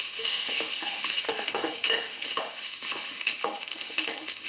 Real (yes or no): no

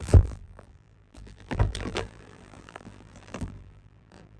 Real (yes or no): no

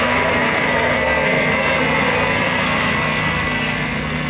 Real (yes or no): no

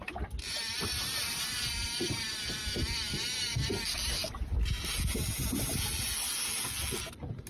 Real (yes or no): yes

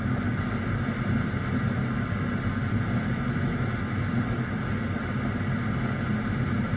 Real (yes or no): yes